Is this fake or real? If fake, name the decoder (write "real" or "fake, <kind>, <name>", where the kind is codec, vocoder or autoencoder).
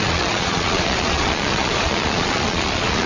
fake, vocoder, Vocos